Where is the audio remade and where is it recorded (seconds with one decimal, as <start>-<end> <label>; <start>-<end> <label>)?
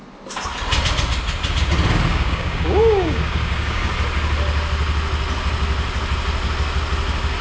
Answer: 0.0-2.1 recorded; 2.1-3.9 remade; 3.9-7.4 recorded